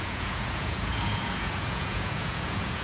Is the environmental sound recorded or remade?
remade